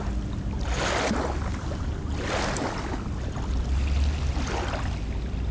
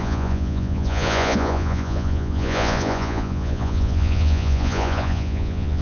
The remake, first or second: second